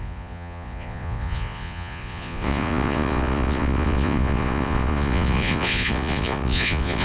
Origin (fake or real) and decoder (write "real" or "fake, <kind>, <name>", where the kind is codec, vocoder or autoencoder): fake, vocoder, Vocos